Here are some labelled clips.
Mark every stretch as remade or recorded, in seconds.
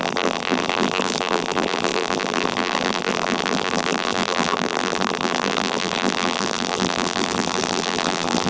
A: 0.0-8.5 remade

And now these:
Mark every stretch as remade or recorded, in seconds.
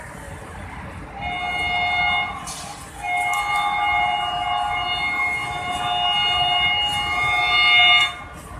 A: 0.0-8.6 recorded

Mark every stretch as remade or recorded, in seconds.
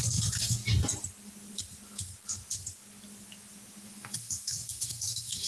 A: 0.0-0.6 remade; 0.6-3.9 recorded; 3.9-5.5 remade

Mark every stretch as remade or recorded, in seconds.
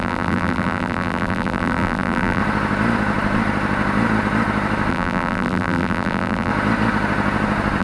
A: 0.0-2.4 remade; 2.4-4.9 recorded; 4.9-6.5 remade; 6.5-7.8 recorded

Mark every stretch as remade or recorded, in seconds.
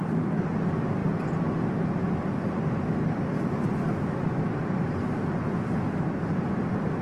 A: 0.0-7.0 recorded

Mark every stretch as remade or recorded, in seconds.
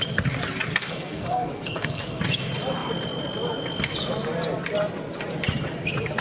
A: 0.0-0.7 recorded; 0.7-2.2 remade; 2.2-6.2 recorded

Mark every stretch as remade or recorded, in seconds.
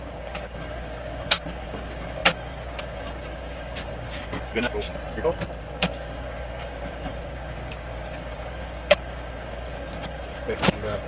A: 0.0-4.9 remade; 4.9-5.6 recorded; 5.6-11.1 remade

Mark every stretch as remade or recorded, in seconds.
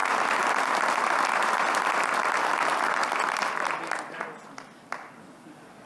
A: 0.0-5.9 recorded